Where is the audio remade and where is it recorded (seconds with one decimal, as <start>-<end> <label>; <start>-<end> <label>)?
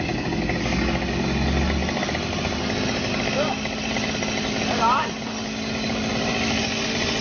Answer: 0.0-7.2 recorded